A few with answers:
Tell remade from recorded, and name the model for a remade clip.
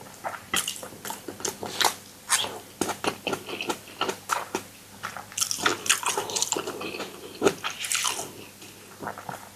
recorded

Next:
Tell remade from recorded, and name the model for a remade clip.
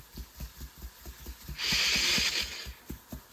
recorded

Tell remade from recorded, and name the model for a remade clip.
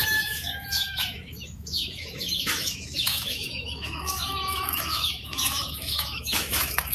remade, autoencoder, DAC-VAE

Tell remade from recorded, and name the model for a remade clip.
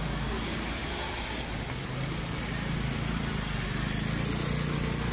recorded